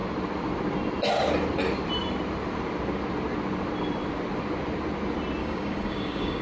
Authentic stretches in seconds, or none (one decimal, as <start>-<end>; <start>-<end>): 0.0-5.4